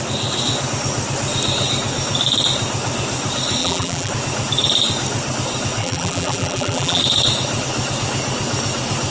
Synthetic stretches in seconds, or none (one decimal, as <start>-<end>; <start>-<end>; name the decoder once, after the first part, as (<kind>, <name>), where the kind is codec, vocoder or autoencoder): 3.6-4.1 (vocoder, BigVGAN v2); 5.8-7.0